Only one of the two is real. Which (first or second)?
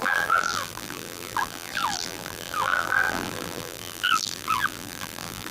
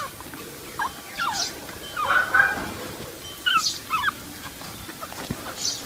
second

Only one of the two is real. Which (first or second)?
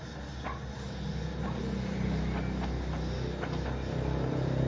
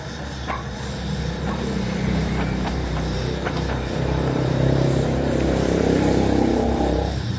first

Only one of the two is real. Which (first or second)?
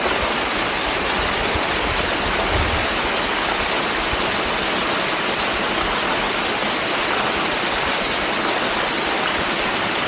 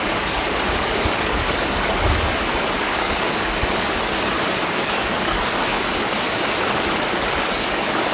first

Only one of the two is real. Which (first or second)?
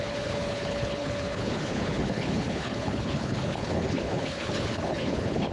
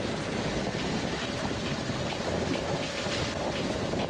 second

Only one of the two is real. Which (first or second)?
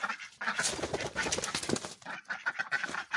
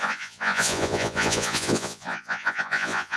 first